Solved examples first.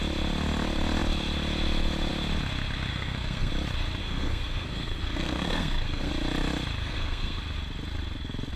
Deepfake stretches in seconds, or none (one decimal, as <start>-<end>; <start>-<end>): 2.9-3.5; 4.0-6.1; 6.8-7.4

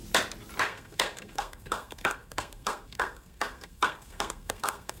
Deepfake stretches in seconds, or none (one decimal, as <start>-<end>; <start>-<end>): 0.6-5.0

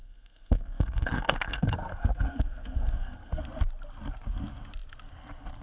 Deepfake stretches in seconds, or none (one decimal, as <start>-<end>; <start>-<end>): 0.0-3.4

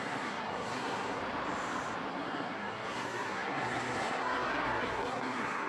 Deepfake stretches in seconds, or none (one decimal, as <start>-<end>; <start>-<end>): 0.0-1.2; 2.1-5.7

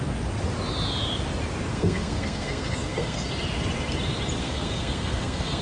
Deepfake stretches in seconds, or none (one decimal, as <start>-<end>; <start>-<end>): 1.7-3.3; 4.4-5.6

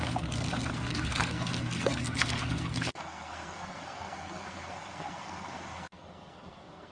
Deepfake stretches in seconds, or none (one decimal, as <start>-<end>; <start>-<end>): 0.0-6.9

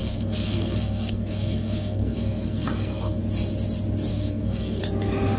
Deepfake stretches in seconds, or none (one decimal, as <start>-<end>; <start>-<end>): 0.0-3.2; 4.1-4.8

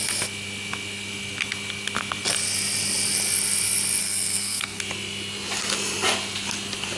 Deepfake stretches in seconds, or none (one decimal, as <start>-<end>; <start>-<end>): 4.0-4.8